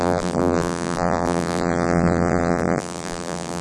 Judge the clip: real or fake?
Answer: fake